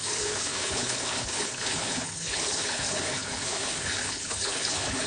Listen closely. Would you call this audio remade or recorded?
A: remade